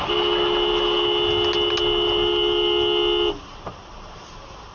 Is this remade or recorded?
recorded